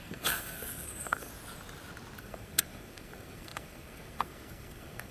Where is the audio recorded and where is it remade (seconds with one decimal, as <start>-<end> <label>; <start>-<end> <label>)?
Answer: 0.0-1.3 remade; 1.3-2.2 recorded; 2.2-5.1 remade